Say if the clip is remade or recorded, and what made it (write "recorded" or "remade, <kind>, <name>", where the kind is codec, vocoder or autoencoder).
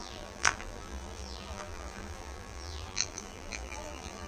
remade, vocoder, BigVGAN v2